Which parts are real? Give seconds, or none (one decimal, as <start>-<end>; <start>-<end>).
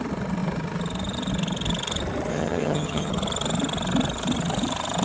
0.0-2.3; 3.1-5.0